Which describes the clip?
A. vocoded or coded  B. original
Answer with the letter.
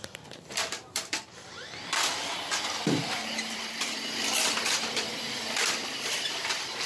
A